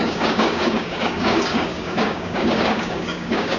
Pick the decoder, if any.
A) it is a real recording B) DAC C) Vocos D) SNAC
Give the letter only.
B